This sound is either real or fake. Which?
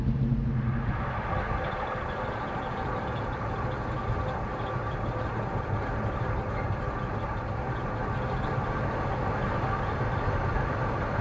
real